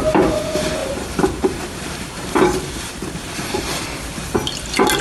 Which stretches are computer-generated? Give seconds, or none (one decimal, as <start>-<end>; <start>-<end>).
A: 0.8-3.8